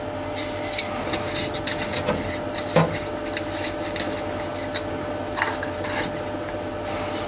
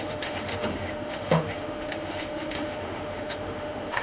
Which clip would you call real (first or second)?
first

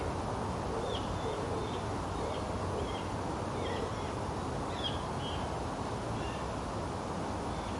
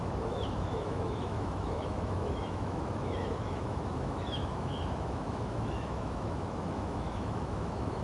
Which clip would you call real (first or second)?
first